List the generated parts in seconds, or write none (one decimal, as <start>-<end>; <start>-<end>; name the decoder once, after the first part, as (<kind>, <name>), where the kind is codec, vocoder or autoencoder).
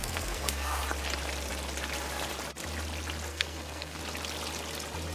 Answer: 0.0-0.8 (codec, SNAC); 3.3-4.0